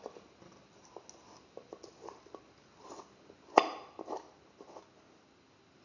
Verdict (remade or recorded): recorded